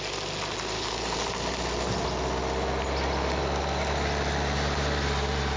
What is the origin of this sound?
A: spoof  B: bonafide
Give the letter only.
B